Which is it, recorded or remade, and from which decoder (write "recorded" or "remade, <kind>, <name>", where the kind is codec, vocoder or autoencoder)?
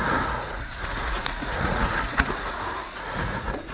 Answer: remade, vocoder, Vocos